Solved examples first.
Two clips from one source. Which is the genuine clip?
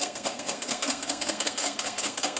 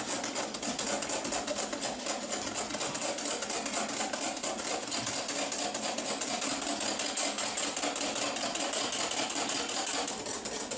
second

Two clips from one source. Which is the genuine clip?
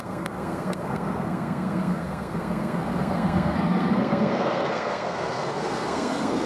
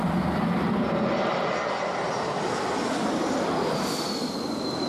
second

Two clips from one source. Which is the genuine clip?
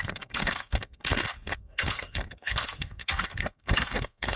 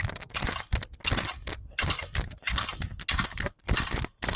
second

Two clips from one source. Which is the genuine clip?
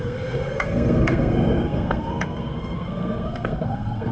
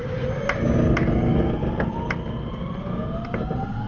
second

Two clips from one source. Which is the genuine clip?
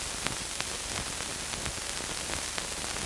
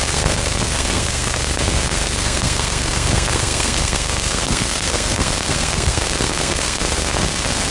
first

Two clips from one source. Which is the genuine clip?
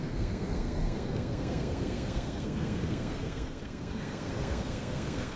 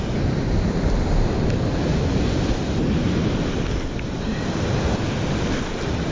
second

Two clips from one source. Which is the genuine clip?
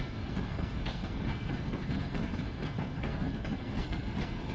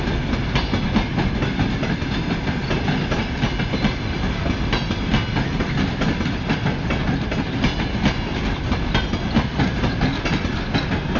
second